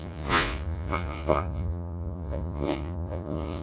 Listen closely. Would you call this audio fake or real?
fake